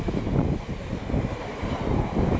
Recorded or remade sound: remade